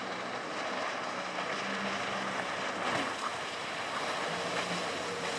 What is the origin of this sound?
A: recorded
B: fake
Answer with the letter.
A